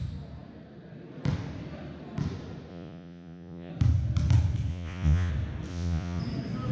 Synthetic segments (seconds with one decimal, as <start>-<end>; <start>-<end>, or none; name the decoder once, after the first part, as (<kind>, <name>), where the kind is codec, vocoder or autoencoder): 2.7-3.7 (vocoder, Vocos); 4.7-5.3; 5.7-6.2